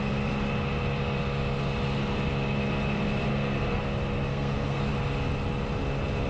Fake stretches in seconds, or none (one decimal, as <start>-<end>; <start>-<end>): 3.3-3.8; 4.3-4.9